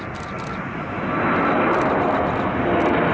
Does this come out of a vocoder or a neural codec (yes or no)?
no